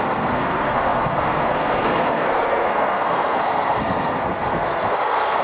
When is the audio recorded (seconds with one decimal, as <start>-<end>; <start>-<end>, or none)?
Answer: none